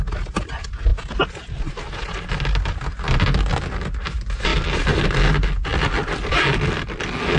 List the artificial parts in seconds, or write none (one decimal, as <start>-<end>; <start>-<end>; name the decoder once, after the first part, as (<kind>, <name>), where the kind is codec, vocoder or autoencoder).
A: 4.5-5.2 (vocoder, BigVGAN v2); 5.7-6.3